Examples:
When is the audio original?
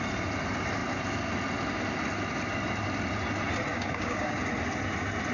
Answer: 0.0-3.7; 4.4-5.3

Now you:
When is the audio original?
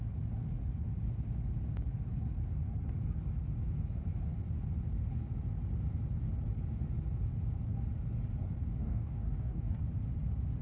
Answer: 0.0-8.8; 9.8-10.6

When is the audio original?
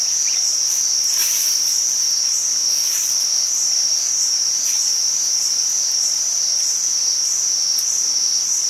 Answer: 0.0-8.7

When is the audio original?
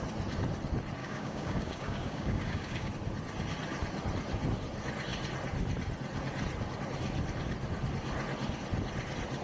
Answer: 0.0-1.0; 2.9-9.4